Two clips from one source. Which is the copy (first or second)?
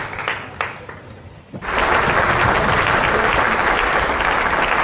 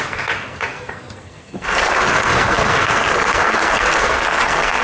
second